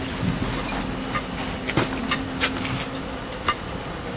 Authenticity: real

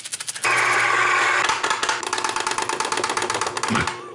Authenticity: real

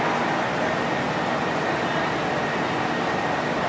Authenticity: real